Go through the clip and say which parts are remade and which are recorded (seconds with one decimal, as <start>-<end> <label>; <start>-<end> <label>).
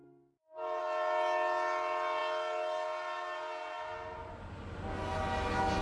0.0-5.8 recorded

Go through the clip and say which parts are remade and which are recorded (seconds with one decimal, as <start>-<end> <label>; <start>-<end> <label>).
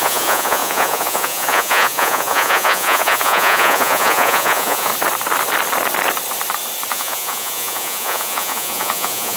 0.0-4.9 remade; 4.9-6.9 recorded; 6.9-9.4 remade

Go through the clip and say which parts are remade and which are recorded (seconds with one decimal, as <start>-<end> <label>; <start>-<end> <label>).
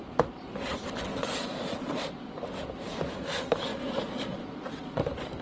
0.0-1.1 recorded; 1.1-2.3 remade; 2.3-3.7 recorded; 3.7-5.0 remade; 5.0-5.4 recorded